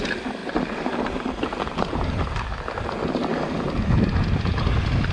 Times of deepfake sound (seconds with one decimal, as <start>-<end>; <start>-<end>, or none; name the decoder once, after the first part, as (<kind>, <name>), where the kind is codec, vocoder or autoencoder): 0.4-2.2 (vocoder, BigVGAN v2)